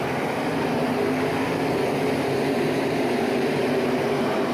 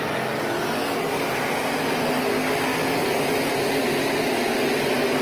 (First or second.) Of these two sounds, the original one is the second